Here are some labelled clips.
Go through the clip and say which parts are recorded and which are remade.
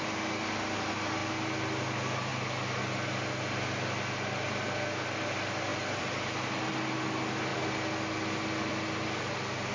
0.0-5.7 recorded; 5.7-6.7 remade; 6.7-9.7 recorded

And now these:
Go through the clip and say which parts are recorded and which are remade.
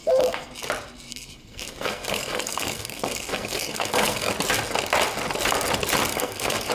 0.0-0.5 remade; 0.5-1.1 recorded; 1.1-4.3 remade; 4.3-6.1 recorded; 6.1-6.7 remade